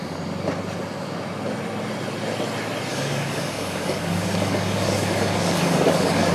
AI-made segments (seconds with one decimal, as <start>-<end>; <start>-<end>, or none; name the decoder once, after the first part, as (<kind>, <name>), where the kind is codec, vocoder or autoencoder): 2.9-6.3 (codec, DAC)